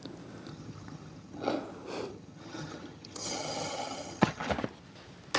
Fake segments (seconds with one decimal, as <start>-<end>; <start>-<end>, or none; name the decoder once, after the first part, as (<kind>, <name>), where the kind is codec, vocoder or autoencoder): 0.5-1.5 (vocoder, HiFi-GAN); 2.1-4.5